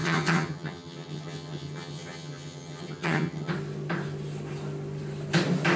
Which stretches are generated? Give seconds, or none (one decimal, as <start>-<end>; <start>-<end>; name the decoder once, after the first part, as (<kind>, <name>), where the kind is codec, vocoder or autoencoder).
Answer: 0.0-3.5 (vocoder, HiFi-GAN)